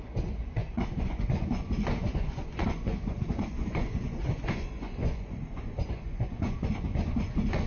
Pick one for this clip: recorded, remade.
remade